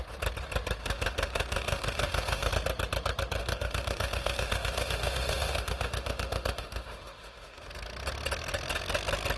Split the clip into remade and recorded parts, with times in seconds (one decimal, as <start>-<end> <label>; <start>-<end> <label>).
0.0-0.8 recorded; 0.8-2.5 remade; 2.5-3.4 recorded; 3.4-7.7 remade; 7.7-9.4 recorded